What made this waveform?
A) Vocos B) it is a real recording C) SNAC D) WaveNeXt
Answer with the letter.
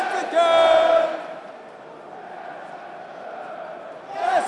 B